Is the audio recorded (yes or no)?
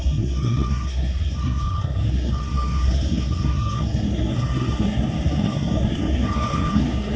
no